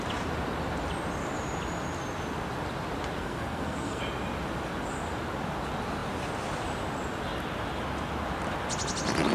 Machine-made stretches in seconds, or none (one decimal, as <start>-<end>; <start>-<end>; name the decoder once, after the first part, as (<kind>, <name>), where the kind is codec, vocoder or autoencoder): 3.2-4.0 (codec, SNAC)